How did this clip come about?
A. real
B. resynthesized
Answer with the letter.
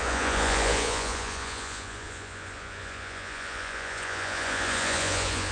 B